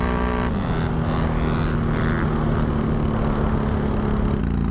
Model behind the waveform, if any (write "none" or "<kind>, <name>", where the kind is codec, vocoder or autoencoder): none